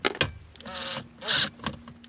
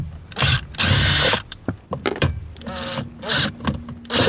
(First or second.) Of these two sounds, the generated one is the second